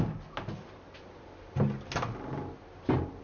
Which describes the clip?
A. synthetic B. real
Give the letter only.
B